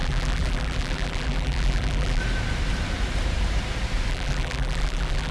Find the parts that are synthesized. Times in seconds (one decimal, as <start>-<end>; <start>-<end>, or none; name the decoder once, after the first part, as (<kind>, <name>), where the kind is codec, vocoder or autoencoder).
0.0-2.2 (vocoder, BigVGAN v2); 4.1-5.3